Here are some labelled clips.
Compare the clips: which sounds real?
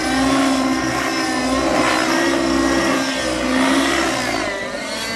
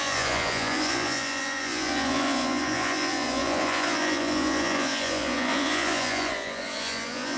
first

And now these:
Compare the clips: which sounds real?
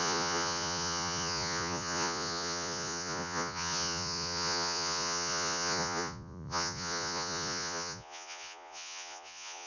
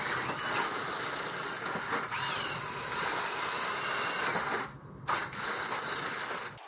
second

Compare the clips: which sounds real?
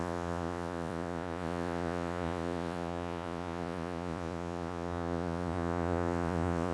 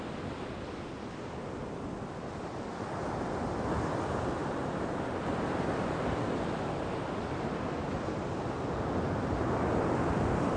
second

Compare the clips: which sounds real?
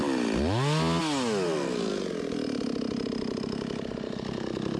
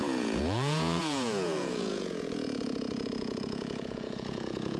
first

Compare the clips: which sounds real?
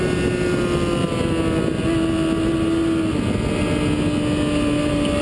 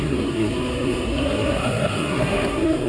first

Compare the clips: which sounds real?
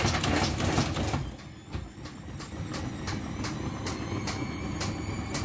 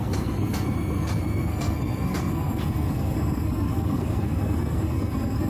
first